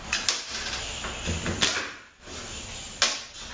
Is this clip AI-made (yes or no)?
no